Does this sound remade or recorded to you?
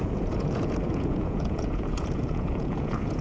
remade